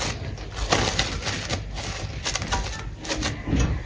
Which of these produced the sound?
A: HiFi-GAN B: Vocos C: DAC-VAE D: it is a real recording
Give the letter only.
D